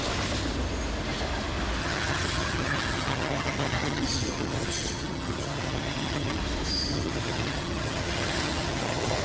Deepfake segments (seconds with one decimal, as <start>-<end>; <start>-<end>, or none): 1.8-6.4; 6.9-9.2